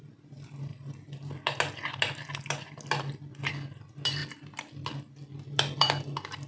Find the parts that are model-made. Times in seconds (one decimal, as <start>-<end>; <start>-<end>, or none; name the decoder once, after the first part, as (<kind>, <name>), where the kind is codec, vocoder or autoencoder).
none